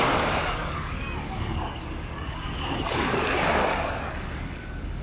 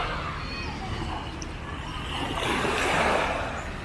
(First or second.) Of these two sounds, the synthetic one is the first